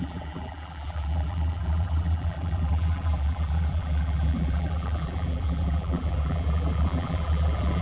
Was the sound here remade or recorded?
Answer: remade